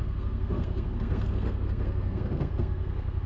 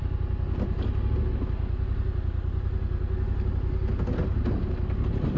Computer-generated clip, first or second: first